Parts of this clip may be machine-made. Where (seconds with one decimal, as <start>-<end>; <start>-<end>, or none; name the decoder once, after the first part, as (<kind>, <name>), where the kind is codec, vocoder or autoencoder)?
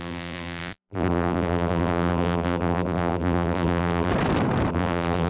0.0-4.1 (vocoder, BigVGAN v2); 4.7-5.3